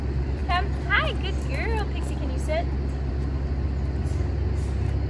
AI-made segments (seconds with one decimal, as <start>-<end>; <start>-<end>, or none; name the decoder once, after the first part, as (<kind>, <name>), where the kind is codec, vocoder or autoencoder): none